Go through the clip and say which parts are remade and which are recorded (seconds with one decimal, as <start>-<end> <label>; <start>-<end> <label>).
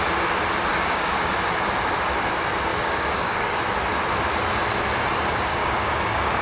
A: 0.0-0.7 recorded; 0.7-1.3 remade; 1.3-2.7 recorded; 2.7-3.6 remade; 3.6-5.5 recorded; 5.5-6.4 remade